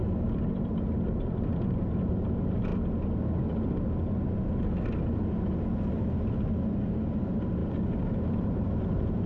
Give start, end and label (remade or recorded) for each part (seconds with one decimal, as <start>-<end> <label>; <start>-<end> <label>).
0.0-2.7 remade; 2.7-7.0 recorded; 7.0-7.6 remade; 7.6-8.2 recorded; 8.2-9.3 remade